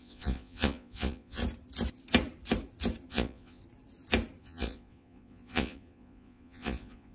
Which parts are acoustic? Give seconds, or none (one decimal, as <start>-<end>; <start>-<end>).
1.4-3.1; 3.6-4.4